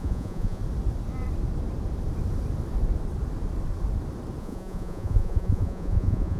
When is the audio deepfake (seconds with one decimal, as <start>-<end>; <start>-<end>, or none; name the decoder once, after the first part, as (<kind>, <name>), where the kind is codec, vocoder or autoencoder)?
0.0-0.6 (vocoder, Vocos); 4.4-6.4